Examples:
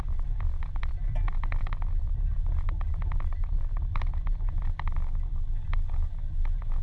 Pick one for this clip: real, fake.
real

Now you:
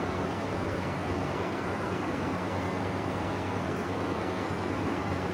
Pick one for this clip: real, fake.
fake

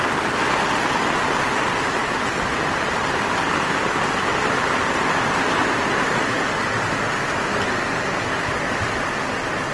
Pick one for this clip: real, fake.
real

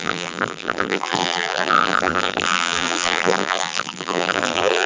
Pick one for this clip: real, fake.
fake